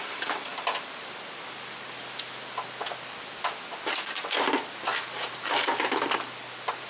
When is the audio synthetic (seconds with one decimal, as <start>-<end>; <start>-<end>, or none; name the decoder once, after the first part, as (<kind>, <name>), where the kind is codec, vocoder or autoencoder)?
none